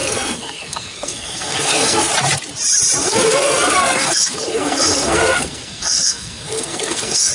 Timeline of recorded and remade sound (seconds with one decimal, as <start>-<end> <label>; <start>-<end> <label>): 0.0-2.1 remade; 2.1-3.0 recorded; 3.0-7.3 remade